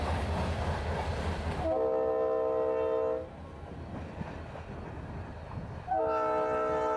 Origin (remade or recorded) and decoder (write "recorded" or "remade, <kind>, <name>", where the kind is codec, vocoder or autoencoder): recorded